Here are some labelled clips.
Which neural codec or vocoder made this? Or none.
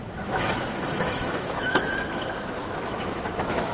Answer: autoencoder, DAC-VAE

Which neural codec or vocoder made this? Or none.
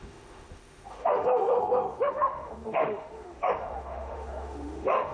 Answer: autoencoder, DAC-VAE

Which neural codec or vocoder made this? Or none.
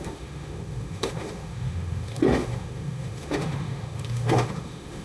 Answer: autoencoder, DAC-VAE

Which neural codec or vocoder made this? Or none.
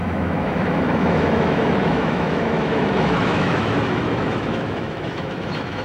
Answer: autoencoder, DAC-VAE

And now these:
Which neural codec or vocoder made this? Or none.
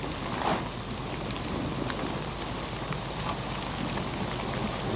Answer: none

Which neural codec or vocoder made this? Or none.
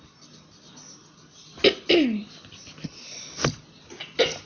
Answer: none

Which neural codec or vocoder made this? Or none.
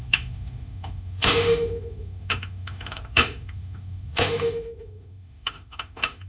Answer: autoencoder, DAC-VAE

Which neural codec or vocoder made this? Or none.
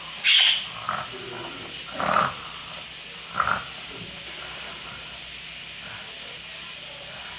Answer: none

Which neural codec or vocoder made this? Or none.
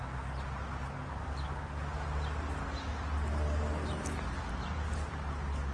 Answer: none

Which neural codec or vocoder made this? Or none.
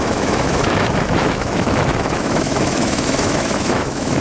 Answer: autoencoder, DAC-VAE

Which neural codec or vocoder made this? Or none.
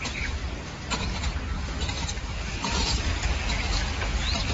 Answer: none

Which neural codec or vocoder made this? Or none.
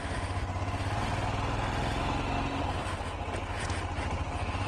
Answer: none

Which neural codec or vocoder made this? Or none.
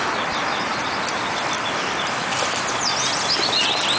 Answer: none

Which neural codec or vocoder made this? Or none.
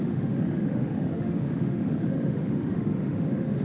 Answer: autoencoder, DAC-VAE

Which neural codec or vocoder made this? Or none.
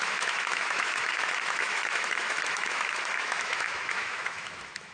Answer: autoencoder, DAC-VAE